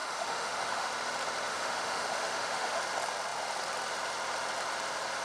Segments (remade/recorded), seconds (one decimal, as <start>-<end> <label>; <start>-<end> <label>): 0.0-0.9 remade; 0.9-1.5 recorded; 1.5-2.8 remade; 2.8-5.2 recorded